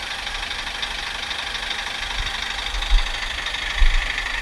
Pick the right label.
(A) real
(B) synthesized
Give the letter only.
A